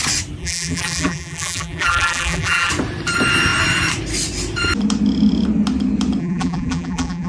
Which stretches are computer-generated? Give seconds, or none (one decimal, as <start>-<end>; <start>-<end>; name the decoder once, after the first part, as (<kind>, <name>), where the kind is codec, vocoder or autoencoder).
0.4-2.7 (vocoder, BigVGAN v2); 6.2-7.3